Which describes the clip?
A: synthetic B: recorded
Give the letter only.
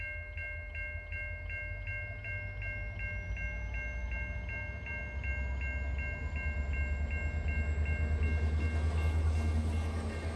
B